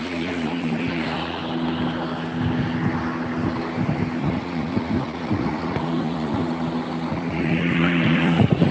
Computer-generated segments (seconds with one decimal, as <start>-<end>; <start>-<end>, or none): 0.0-1.4; 4.2-6.4; 7.1-8.7